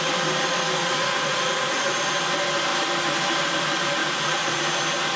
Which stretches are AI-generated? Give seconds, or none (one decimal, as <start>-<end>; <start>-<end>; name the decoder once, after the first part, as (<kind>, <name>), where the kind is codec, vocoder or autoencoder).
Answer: 0.8-2.0 (vocoder, Vocos); 4.0-4.6